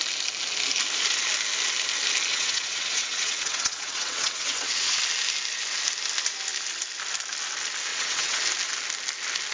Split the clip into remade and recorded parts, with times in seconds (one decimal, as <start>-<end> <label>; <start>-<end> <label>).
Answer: 0.0-2.3 recorded; 2.3-5.0 remade; 5.0-7.9 recorded; 7.9-8.4 remade; 8.4-9.5 recorded